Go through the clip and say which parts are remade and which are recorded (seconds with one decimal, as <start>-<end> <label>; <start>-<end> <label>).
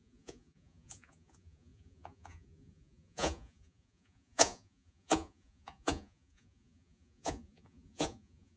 0.0-8.6 remade